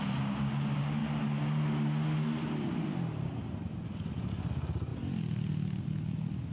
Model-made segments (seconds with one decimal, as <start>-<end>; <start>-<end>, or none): none